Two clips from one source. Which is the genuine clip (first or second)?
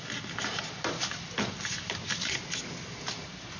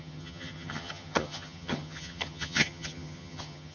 first